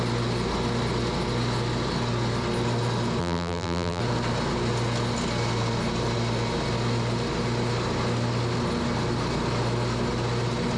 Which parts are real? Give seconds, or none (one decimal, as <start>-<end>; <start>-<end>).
0.0-3.2; 4.0-10.8